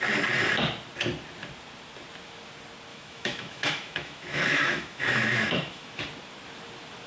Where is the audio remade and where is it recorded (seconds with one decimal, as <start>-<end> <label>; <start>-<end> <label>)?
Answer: 0.0-2.9 recorded; 2.9-6.0 remade; 6.0-7.1 recorded